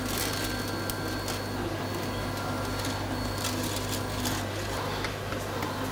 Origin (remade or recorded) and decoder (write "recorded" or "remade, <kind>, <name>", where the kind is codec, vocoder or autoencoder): recorded